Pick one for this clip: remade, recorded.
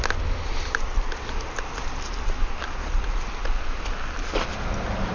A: recorded